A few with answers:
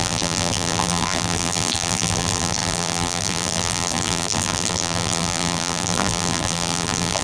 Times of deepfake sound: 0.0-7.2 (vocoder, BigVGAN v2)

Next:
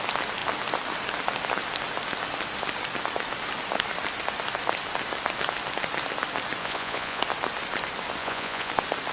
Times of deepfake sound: 6.6-7.2 (vocoder, Vocos); 8.2-8.7

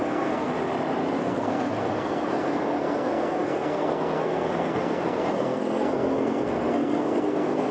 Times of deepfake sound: 0.0-0.5 (codec, SNAC); 1.2-7.7

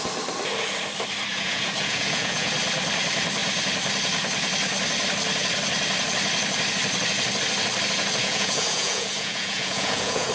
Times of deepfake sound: 1.3-2.5 (vocoder, Vocos); 8.2-10.3